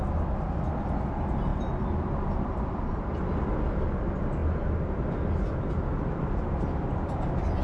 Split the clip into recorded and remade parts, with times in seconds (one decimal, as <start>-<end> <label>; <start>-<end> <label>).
0.0-7.6 recorded

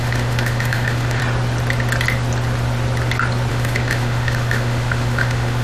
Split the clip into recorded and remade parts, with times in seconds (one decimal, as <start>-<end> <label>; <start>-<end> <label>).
0.0-1.2 remade; 1.2-3.5 recorded; 3.5-5.6 remade

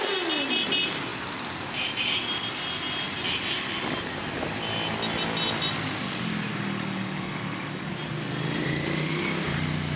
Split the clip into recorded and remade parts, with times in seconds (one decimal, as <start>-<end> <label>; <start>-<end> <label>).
0.0-6.5 recorded; 6.5-7.9 remade; 7.9-10.0 recorded

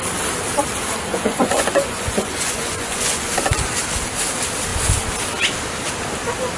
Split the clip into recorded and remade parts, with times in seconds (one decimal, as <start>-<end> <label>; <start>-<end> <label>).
0.0-1.1 recorded; 1.1-3.3 remade; 3.3-6.6 recorded